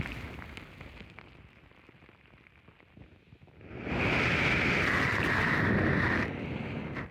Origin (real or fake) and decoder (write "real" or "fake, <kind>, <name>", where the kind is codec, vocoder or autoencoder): real